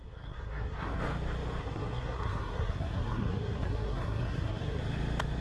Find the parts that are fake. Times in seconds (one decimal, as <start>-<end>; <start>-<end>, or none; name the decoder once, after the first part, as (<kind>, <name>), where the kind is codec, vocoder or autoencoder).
0.0-1.0 (codec, SNAC); 1.6-4.8